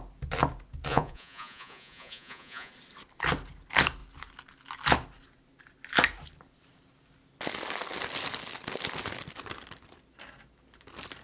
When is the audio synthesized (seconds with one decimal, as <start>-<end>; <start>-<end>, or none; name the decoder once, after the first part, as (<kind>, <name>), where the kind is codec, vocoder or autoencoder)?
0.9-2.7 (vocoder, Vocos)